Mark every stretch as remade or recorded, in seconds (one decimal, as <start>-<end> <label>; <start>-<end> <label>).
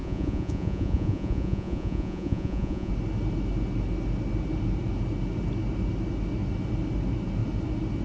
0.0-2.9 remade; 2.9-8.0 recorded